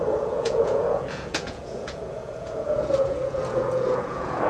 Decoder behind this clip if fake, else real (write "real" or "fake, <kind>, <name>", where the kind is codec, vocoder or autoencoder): fake, vocoder, Vocos